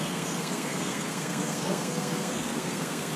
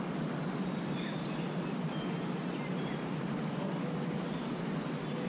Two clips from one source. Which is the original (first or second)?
second